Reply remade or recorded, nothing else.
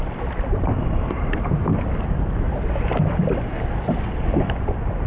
recorded